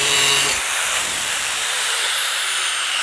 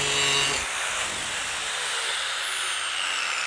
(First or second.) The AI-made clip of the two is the first